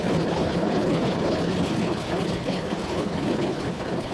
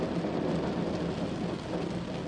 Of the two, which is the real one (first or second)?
second